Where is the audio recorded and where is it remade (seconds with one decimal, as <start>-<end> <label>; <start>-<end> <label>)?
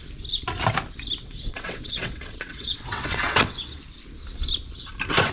0.0-1.2 recorded; 1.2-3.8 remade; 3.8-5.3 recorded